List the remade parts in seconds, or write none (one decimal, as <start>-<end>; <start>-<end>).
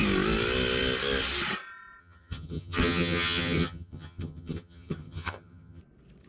2.0-5.8